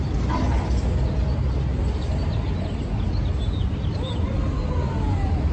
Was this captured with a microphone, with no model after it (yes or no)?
yes